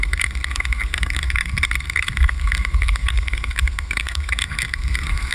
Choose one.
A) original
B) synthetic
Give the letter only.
B